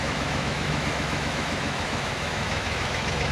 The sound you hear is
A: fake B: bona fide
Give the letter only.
A